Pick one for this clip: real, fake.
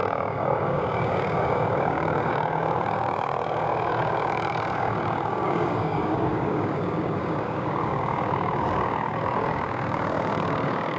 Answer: fake